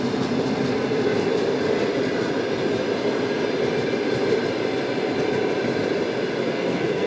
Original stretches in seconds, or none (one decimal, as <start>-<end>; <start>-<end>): 0.0-6.4